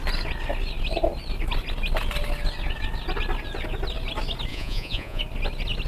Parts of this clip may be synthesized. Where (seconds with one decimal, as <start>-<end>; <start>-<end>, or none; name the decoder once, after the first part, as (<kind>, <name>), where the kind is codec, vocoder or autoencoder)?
4.5-5.2 (vocoder, Vocos)

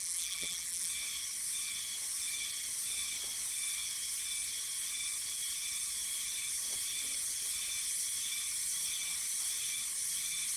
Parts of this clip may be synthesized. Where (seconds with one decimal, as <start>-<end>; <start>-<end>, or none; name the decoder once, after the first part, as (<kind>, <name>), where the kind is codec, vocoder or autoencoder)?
0.0-0.9 (vocoder, BigVGAN v2)

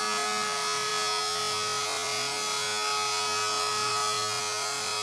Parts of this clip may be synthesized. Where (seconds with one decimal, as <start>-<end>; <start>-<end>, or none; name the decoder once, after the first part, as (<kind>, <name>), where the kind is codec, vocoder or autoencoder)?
none

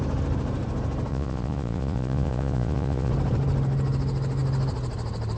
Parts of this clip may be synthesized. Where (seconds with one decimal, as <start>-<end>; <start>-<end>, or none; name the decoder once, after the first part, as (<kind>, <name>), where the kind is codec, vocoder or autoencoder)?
1.1-3.1 (vocoder, Vocos)